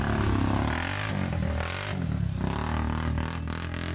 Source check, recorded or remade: recorded